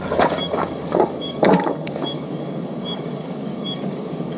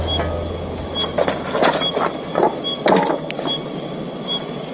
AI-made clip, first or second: first